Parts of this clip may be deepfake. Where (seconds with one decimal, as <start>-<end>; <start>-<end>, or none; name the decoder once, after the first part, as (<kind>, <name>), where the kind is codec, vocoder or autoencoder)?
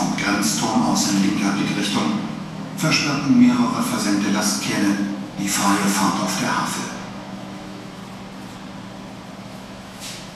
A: 0.0-6.2 (autoencoder, DAC-VAE); 6.9-8.0; 9.4-10.4